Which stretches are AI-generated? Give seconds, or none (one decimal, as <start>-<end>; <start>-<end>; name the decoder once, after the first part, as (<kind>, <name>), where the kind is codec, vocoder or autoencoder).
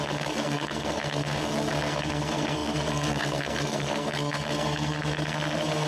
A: 0.0-5.9 (codec, SNAC)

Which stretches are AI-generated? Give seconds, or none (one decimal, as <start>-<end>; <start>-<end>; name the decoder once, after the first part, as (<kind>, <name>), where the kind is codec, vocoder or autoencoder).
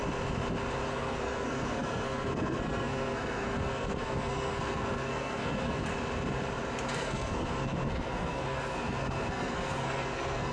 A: 0.9-5.9 (codec, SNAC); 6.9-10.5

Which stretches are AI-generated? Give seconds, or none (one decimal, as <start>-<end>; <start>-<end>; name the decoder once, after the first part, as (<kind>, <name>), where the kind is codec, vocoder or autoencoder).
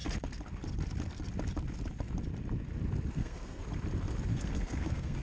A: 3.1-3.6 (codec, SNAC); 4.3-5.2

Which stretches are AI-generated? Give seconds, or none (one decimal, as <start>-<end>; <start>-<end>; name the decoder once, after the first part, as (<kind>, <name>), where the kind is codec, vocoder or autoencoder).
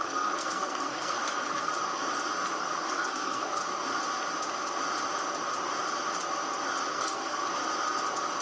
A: 0.0-1.7 (codec, SNAC); 2.6-3.6; 6.9-7.4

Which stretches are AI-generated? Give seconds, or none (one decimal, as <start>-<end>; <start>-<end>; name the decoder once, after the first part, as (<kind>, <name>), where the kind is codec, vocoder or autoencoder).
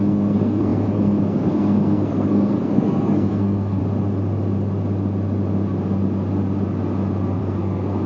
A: 0.0-3.8 (codec, SNAC); 7.4-8.1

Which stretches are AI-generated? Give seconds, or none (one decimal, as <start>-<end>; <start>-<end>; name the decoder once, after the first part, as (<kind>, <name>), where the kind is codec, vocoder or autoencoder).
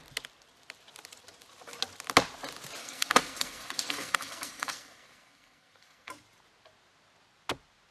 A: 2.8-6.1 (codec, SNAC)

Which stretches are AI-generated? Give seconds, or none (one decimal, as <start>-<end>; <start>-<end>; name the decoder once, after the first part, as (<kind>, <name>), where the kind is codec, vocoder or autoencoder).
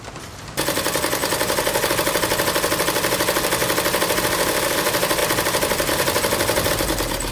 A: none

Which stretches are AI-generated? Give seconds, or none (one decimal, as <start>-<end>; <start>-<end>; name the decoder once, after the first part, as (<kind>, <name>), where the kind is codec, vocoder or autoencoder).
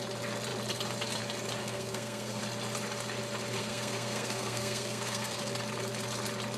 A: 1.6-2.4 (codec, SNAC); 3.6-5.5